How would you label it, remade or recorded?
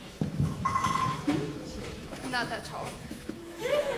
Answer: remade